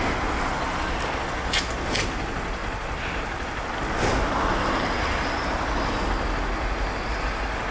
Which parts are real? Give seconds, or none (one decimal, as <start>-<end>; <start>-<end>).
0.0-7.7